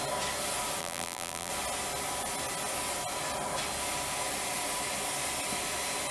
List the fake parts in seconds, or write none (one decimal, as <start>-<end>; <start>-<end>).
0.8-1.5